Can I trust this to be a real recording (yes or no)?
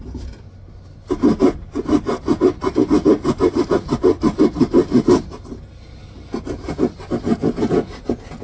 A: yes